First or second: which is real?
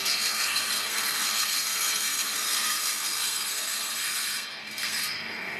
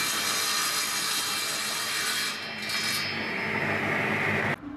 second